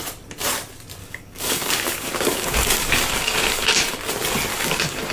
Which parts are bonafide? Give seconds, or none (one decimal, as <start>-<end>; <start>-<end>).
0.0-1.0; 4.1-4.5